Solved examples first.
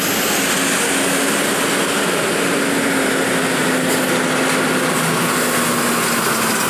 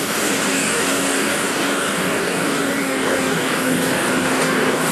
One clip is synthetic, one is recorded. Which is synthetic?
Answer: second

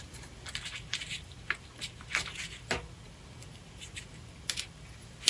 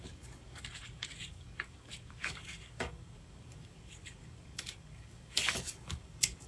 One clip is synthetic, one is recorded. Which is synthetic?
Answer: second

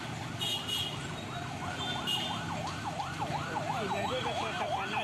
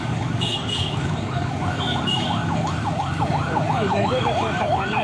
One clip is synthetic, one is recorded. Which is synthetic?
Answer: second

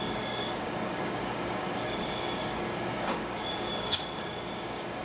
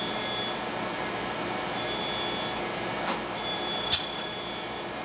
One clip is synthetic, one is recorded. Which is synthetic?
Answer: first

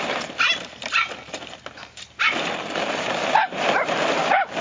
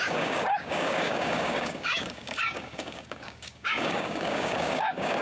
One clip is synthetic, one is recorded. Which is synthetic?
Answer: second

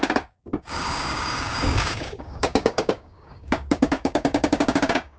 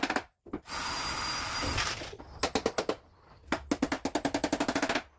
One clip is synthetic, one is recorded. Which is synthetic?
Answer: first